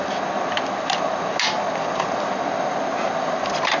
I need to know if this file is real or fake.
real